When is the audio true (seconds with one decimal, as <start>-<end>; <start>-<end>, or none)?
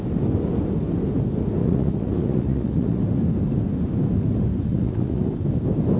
0.0-1.6; 3.0-4.7; 5.3-6.0